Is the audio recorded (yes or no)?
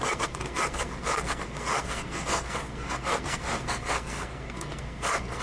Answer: no